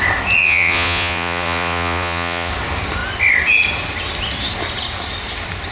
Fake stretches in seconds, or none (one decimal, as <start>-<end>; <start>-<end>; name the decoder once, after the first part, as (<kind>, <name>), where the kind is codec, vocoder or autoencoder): 0.4-2.5 (vocoder, Vocos)